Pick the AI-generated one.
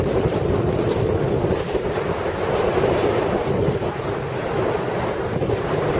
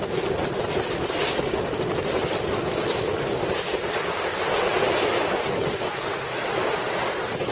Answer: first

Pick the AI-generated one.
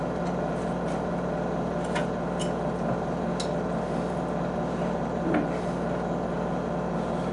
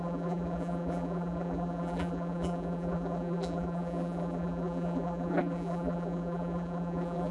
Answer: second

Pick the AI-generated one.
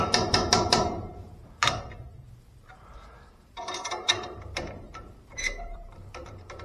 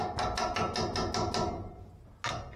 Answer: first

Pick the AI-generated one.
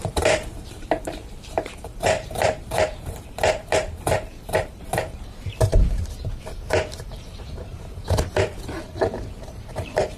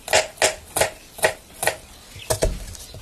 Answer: first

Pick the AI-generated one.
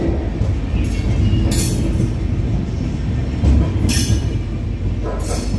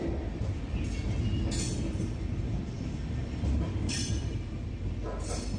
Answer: second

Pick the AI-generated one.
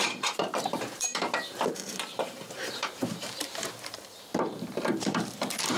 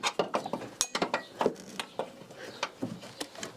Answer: first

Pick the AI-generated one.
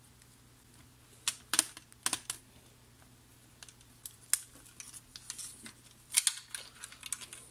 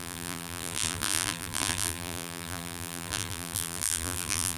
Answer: second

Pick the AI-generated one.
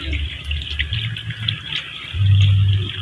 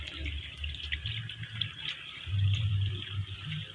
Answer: second